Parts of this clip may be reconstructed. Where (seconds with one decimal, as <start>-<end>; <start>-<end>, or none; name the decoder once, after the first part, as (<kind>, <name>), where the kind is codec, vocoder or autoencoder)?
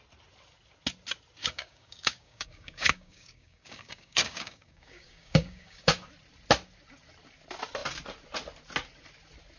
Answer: 1.4-5.9 (codec, DAC)